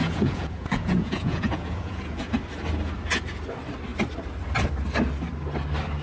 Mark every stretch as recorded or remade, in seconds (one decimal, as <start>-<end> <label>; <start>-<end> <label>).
0.0-2.3 remade; 2.3-6.0 recorded